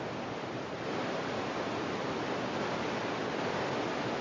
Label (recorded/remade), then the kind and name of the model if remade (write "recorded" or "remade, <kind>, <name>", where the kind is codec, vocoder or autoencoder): recorded